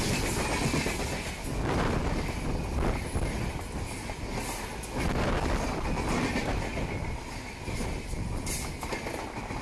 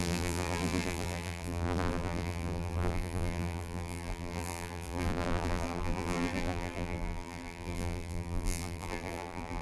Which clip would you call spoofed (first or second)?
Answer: second